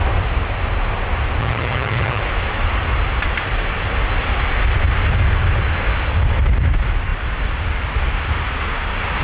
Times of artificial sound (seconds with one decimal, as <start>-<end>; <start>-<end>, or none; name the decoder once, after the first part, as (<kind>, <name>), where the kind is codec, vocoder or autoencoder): 1.4-2.2 (vocoder, HiFi-GAN)